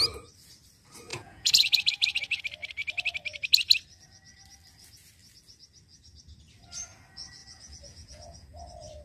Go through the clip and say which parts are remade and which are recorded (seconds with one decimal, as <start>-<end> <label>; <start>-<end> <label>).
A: 0.0-1.1 recorded; 1.1-2.4 remade; 2.4-7.4 recorded; 7.4-8.6 remade; 8.6-9.0 recorded